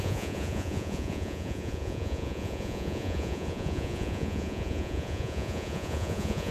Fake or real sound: fake